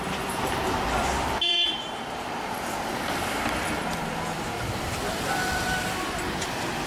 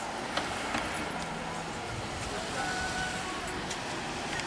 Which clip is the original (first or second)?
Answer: second